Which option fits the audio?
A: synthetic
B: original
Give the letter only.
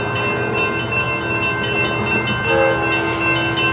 B